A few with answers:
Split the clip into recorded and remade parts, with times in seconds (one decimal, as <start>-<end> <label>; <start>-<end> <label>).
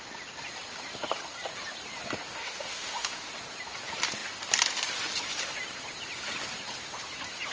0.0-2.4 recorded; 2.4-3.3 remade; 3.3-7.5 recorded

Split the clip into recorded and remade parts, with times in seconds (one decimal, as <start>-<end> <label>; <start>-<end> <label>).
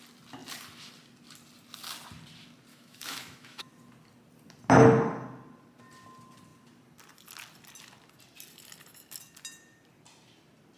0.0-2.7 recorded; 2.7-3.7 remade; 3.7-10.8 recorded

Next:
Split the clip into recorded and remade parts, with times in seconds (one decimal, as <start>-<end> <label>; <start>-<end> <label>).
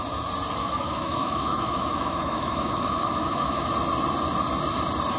0.0-0.6 recorded; 0.6-3.7 remade; 3.7-5.2 recorded